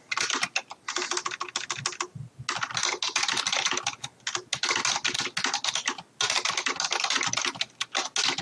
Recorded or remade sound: recorded